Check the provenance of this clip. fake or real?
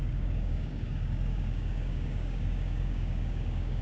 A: fake